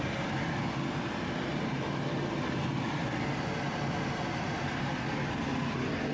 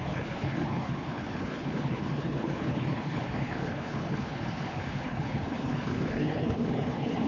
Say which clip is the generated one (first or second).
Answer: second